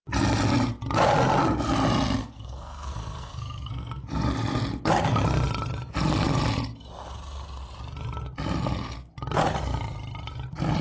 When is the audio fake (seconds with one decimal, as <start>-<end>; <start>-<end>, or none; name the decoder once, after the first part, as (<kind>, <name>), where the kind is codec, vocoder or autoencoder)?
2.2-4.0 (codec, SNAC)